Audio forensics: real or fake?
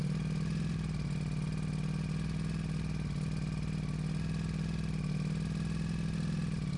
real